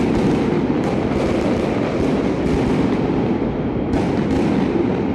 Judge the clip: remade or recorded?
recorded